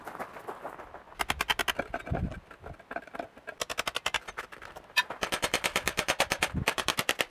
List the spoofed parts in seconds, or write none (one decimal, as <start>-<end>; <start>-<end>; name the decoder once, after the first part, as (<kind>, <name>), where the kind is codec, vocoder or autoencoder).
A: 0.0-1.5 (vocoder, BigVGAN v2); 2.1-7.3